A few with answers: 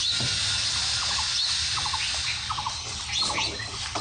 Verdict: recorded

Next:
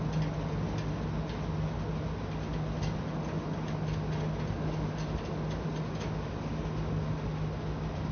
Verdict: recorded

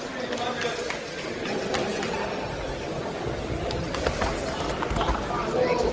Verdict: recorded